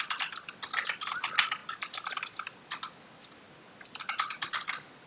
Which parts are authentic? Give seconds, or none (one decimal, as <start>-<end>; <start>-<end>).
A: 0.0-5.1